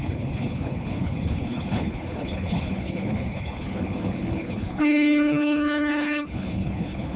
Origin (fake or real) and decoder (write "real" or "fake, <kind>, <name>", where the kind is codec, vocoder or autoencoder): fake, codec, HILCodec